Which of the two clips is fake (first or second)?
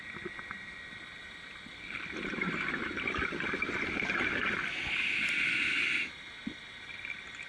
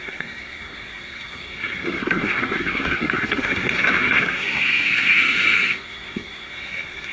second